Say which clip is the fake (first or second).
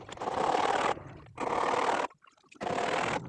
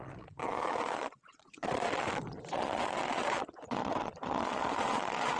second